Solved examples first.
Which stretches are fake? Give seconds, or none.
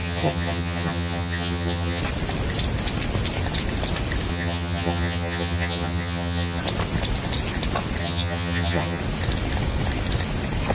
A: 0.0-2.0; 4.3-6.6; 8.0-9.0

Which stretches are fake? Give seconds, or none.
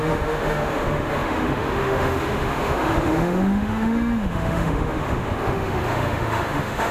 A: 0.0-6.9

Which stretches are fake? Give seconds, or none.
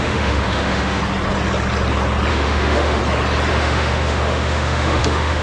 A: 0.0-1.0; 2.3-3.0; 3.5-5.4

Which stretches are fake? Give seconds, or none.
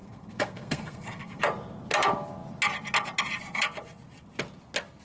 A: 0.0-1.4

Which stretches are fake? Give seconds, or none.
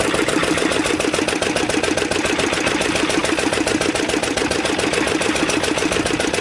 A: 3.2-5.4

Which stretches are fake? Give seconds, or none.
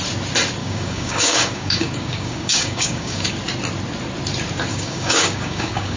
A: 0.6-3.3; 4.7-6.0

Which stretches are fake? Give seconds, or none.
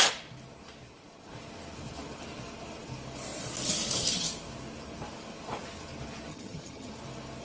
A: 6.3-6.9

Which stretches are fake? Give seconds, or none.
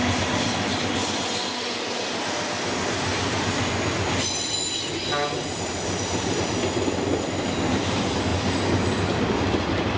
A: 3.1-3.7; 5.4-6.5